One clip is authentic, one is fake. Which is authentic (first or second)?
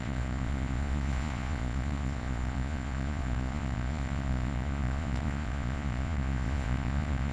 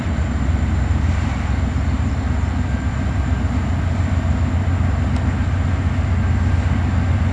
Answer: second